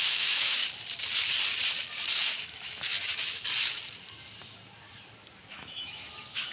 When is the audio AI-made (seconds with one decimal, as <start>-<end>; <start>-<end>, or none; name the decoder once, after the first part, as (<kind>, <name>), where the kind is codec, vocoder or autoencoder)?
0.0-0.6 (autoencoder, DAC-VAE); 2.3-2.9; 5.5-6.5